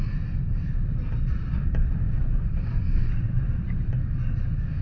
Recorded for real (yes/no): yes